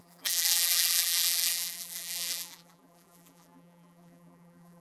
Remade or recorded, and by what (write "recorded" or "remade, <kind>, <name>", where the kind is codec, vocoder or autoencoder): remade, vocoder, BigVGAN v2